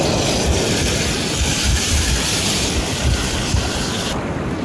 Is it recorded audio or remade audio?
remade